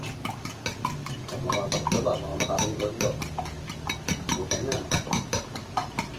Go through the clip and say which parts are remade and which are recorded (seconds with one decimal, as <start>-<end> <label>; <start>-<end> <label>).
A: 0.0-2.3 recorded; 2.3-6.2 remade